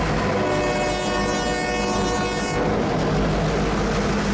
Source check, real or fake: real